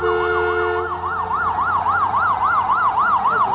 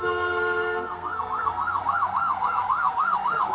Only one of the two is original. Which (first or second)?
first